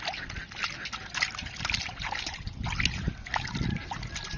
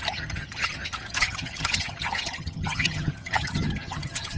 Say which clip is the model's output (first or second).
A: second